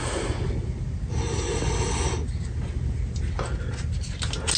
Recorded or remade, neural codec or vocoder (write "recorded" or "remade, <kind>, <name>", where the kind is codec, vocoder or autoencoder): recorded